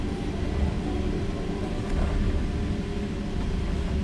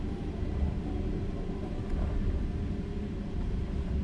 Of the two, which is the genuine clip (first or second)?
first